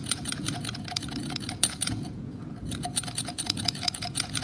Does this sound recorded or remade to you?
remade